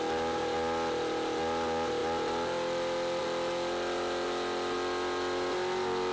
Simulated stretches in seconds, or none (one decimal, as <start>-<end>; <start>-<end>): none